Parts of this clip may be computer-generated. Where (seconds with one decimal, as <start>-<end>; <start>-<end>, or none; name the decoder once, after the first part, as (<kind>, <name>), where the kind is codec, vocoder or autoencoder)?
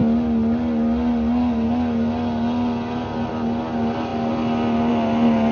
none